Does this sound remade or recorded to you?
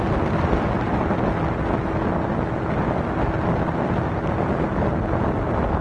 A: recorded